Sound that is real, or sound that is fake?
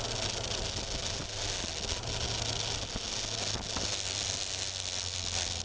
real